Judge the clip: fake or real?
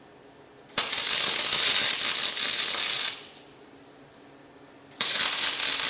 real